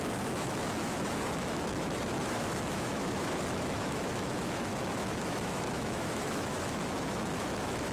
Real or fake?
fake